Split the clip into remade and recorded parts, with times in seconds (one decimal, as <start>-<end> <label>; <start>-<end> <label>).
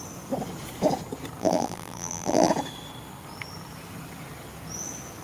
0.0-1.4 recorded; 1.4-2.5 remade; 2.5-5.2 recorded